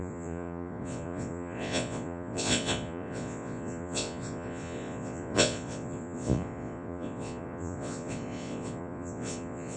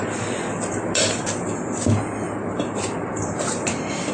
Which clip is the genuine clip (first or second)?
second